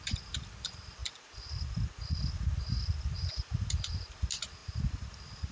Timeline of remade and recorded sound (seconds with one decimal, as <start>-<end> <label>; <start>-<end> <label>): 0.0-1.0 recorded; 1.0-2.3 remade; 2.3-4.6 recorded; 4.6-5.5 remade